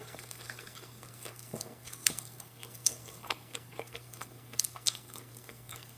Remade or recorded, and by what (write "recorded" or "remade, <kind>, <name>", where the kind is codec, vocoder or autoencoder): remade, codec, SNAC